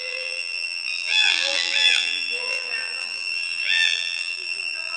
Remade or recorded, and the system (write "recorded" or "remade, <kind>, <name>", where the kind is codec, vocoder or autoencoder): remade, vocoder, BigVGAN v2